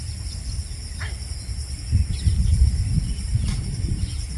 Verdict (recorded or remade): recorded